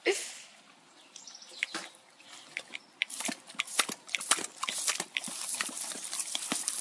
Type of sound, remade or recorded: remade